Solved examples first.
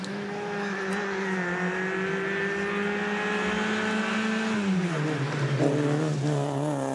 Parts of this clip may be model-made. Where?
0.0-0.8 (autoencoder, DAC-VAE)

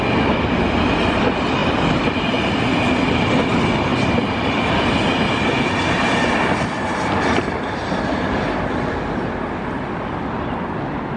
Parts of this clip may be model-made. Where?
none

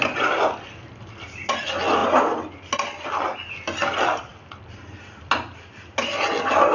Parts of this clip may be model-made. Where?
none

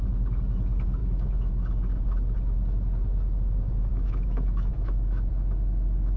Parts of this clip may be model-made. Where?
1.0-1.5 (autoencoder, DAC-VAE); 3.9-5.3

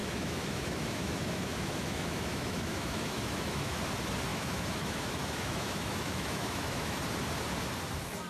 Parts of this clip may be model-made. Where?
0.0-3.8 (autoencoder, DAC-VAE); 4.3-7.0

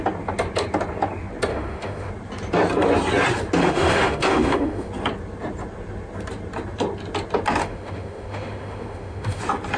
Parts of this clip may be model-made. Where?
1.5-2.1 (autoencoder, DAC-VAE); 3.6-4.9; 7.6-9.4

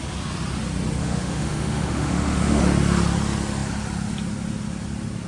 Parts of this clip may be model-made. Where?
1.0-2.6 (autoencoder, DAC-VAE)

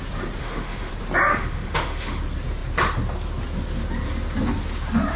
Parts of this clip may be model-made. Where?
0.4-0.9 (autoencoder, DAC-VAE); 1.3-2.2